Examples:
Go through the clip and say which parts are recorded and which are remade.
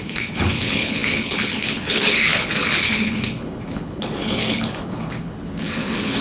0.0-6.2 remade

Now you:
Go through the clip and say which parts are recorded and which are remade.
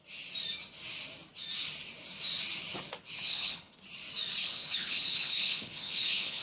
0.0-3.0 recorded; 3.0-3.8 remade; 3.8-4.4 recorded; 4.4-6.4 remade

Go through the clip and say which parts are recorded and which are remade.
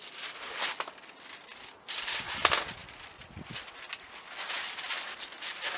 0.0-5.8 recorded